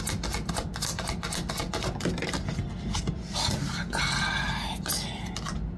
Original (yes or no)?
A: yes